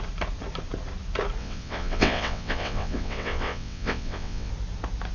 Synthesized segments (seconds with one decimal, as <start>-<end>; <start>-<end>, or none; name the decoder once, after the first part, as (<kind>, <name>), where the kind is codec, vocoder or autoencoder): 1.4-4.5 (vocoder, WaveNeXt)